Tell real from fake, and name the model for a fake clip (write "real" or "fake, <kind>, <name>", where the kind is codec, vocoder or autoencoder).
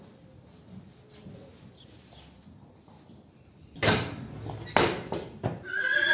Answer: real